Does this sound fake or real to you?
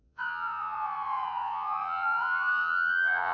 fake